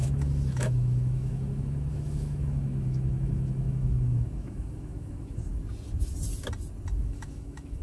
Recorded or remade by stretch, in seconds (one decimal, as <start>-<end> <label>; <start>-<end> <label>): 0.0-5.5 remade; 5.5-7.0 recorded; 7.0-7.8 remade